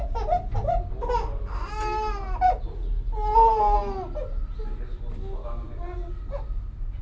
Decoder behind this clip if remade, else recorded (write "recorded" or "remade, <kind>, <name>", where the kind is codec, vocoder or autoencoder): recorded